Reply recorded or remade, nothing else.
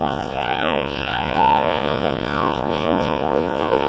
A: remade